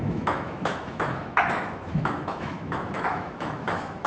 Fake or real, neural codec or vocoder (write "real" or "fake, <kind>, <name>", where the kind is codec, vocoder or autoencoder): fake, autoencoder, DAC-VAE